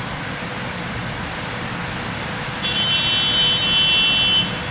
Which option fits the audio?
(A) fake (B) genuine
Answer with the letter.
B